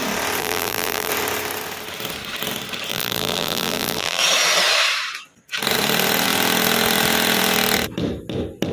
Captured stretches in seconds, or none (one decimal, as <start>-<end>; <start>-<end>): 0.0-0.4; 1.1-2.9; 4.2-8.7

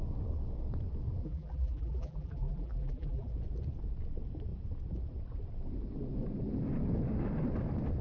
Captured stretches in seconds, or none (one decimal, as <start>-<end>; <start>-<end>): 0.0-1.2; 3.3-8.0

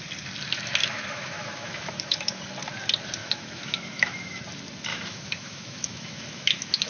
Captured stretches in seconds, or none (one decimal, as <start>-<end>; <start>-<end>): 0.0-0.8; 2.4-3.2; 4.4-4.9

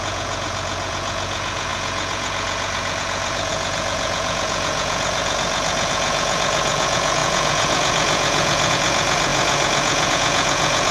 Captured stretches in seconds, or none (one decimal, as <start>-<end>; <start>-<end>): none

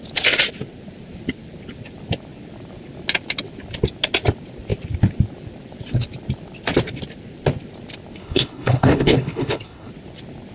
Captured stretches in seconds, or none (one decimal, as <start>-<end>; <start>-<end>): 0.0-8.2; 9.9-10.5

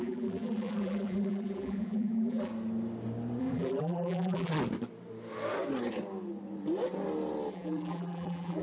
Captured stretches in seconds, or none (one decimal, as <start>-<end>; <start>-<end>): 2.5-3.4; 4.5-7.5